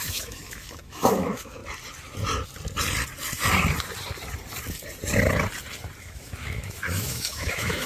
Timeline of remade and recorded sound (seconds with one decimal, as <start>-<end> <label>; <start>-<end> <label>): 0.0-1.6 remade; 1.6-6.0 recorded; 6.0-7.9 remade